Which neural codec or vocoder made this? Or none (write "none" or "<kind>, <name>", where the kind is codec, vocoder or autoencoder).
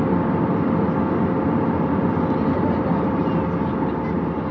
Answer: none